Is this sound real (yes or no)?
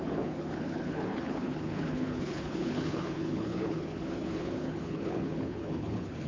no